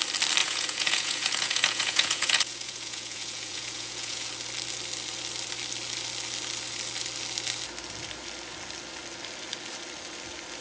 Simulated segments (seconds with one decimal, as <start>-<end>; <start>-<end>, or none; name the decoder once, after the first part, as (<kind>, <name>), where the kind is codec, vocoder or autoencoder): 0.4-4.3 (vocoder, Vocos)